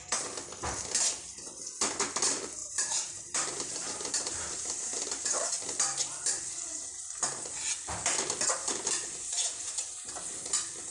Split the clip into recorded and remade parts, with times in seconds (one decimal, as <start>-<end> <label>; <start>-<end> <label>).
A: 0.0-2.6 recorded; 2.6-5.5 remade; 5.5-8.6 recorded; 8.6-10.1 remade; 10.1-10.9 recorded